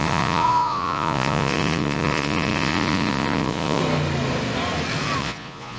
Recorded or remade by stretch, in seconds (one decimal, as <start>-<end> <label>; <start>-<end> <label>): 0.0-3.8 remade; 3.8-5.2 recorded; 5.2-5.8 remade